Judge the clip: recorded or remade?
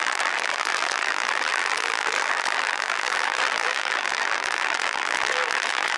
remade